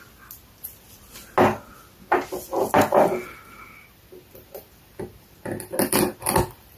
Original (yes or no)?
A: yes